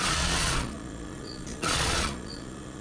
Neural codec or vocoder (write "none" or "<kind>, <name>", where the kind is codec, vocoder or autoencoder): vocoder, Vocos